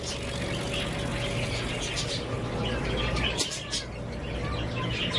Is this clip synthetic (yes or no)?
no